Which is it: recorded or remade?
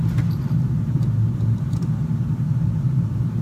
recorded